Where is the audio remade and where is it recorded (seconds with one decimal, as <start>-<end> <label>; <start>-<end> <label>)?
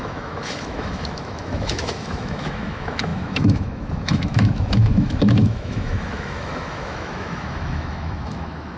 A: 0.0-8.8 remade